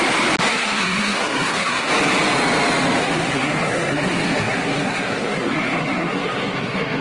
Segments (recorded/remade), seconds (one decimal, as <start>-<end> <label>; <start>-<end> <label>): 0.0-0.5 recorded; 0.5-1.9 remade; 1.9-3.0 recorded; 3.0-7.0 remade